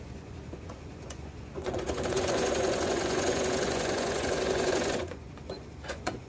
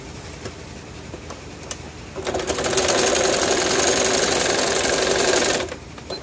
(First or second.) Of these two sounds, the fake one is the first